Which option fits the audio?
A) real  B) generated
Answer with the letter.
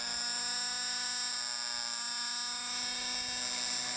A